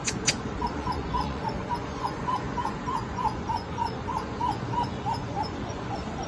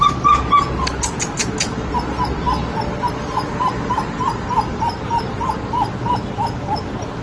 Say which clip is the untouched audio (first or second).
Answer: second